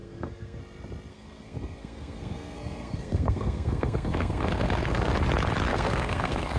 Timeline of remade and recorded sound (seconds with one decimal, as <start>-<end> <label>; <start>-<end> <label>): 0.0-0.6 remade; 0.6-1.1 recorded; 1.1-5.1 remade; 5.1-5.7 recorded; 5.7-6.6 remade